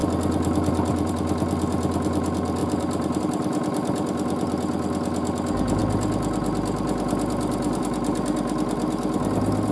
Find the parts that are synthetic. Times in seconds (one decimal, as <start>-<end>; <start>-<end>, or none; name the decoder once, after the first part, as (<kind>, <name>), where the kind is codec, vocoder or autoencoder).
2.6-3.2 (vocoder, BigVGAN v2)